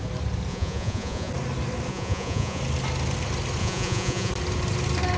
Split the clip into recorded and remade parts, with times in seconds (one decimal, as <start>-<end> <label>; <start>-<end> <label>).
0.0-0.5 recorded; 0.5-1.3 remade; 1.3-1.9 recorded; 1.9-2.6 remade; 2.6-3.6 recorded; 3.6-4.3 remade; 4.3-5.2 recorded